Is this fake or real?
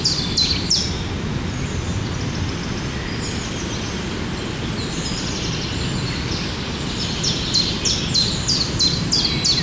real